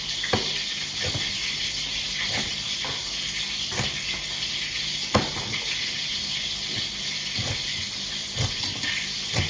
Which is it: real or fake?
real